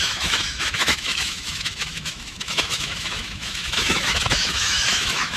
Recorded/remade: remade